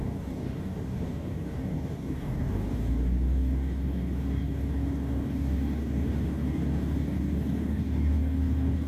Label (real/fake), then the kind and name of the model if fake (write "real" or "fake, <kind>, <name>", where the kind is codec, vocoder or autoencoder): fake, codec, DAC